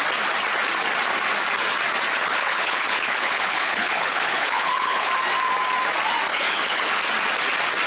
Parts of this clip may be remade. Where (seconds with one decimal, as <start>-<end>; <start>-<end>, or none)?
2.2-5.1; 6.3-7.0